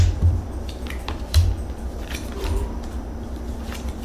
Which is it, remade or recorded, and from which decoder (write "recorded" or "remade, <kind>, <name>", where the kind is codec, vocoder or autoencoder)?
remade, vocoder, BigVGAN v2